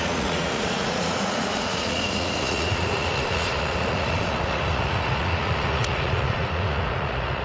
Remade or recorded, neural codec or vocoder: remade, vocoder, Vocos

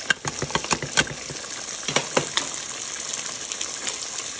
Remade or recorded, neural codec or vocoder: recorded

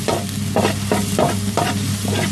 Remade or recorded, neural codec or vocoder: recorded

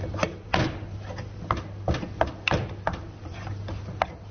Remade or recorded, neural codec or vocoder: recorded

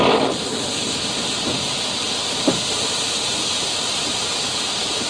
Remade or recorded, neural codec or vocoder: recorded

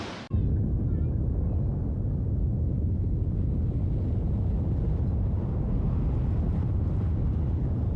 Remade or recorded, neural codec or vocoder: recorded